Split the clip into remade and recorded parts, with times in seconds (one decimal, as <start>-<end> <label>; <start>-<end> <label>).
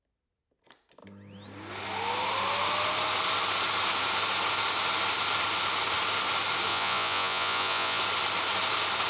0.0-6.7 recorded; 6.7-8.0 remade; 8.0-9.1 recorded